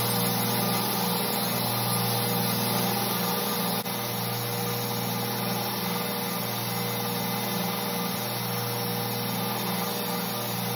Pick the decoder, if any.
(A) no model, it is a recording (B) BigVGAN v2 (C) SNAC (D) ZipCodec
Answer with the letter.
A